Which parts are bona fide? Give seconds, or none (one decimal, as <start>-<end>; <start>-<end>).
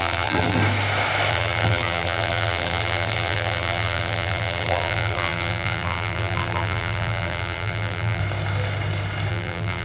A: 0.6-1.3; 8.2-9.3